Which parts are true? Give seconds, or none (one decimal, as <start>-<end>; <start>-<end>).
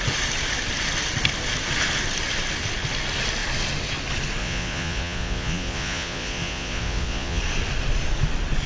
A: 0.0-4.4; 7.4-8.7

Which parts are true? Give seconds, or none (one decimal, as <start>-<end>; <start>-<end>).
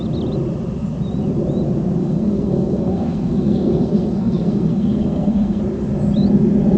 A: 0.0-2.0; 5.6-6.8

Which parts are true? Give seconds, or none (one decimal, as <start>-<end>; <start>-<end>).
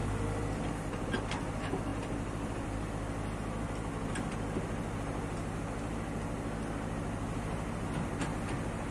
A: 0.7-1.9; 2.9-8.9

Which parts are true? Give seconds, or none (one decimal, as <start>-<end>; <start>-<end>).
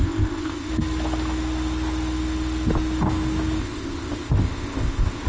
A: 0.7-3.6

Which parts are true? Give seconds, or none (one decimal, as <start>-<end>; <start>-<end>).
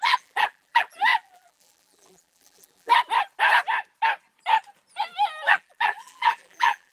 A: 2.9-5.5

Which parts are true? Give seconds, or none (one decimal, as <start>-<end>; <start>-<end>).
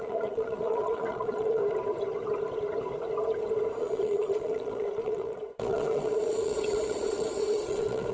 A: 1.6-3.8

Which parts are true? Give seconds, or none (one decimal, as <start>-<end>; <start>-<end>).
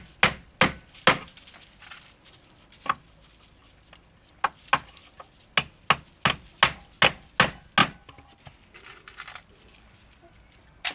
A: 0.0-10.9